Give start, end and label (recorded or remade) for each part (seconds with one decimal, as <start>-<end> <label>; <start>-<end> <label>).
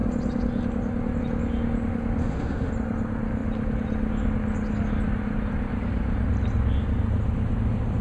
0.0-2.2 recorded; 2.2-2.7 remade; 2.7-8.0 recorded